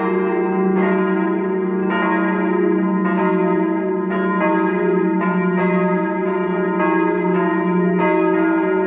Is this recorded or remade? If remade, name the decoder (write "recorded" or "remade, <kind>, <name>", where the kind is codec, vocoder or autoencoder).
recorded